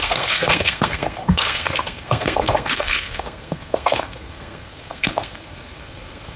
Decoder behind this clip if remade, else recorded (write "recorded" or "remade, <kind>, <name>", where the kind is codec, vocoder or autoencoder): remade, codec, SNAC